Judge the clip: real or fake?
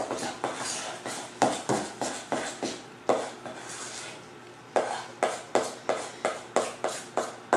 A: real